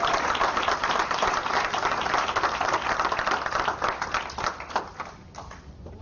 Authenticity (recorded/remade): recorded